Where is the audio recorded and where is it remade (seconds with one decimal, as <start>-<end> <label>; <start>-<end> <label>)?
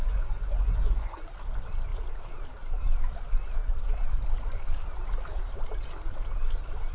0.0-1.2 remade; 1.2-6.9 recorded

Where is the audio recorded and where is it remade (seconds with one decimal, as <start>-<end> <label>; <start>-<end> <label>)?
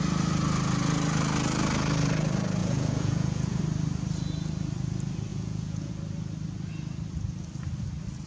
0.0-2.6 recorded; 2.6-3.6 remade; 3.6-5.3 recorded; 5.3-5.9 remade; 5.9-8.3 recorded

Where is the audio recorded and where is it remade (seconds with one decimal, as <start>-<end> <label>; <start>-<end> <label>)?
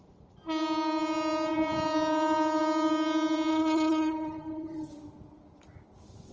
0.0-3.5 recorded; 3.5-4.9 remade; 4.9-6.3 recorded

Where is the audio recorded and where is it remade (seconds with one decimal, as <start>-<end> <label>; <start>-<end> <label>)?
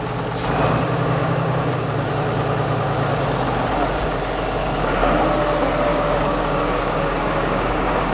0.0-1.2 recorded; 1.2-2.1 remade; 2.1-4.6 recorded; 4.6-5.1 remade; 5.1-5.9 recorded; 5.9-8.1 remade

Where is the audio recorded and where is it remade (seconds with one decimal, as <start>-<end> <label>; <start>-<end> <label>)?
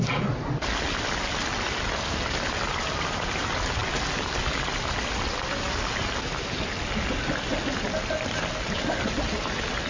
0.0-9.9 recorded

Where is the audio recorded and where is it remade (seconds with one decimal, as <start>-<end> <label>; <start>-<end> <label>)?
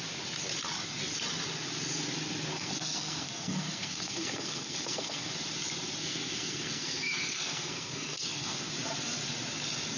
0.0-2.5 recorded; 2.5-5.3 remade; 5.3-6.1 recorded; 6.1-8.7 remade; 8.7-10.0 recorded